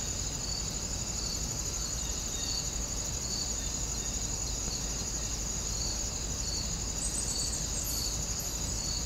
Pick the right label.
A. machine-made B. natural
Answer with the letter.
B